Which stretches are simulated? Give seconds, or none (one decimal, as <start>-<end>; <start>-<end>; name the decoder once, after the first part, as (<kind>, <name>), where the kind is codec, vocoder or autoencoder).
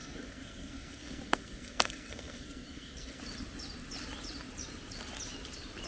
0.0-3.2 (codec, SNAC)